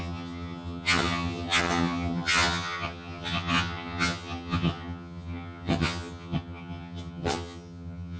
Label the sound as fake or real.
fake